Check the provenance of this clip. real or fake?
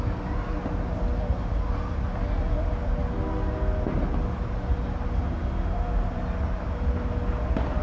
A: real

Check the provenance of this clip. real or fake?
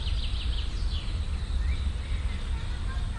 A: real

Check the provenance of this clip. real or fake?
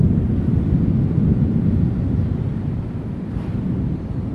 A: real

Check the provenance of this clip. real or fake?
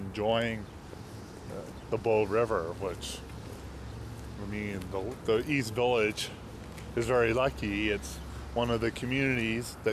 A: real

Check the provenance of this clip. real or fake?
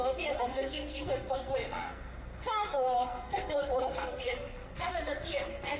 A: fake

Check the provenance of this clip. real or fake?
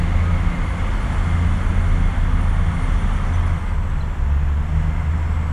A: real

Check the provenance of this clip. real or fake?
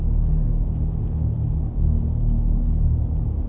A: real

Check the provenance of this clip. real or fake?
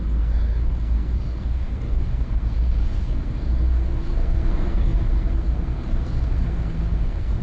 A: fake